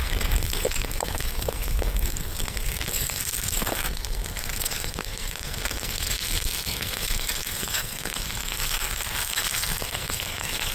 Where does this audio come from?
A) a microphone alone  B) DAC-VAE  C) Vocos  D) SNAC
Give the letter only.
D